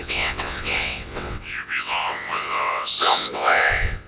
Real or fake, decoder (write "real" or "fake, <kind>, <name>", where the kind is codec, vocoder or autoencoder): fake, vocoder, WaveNeXt